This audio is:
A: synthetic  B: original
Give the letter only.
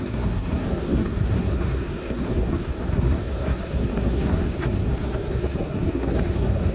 A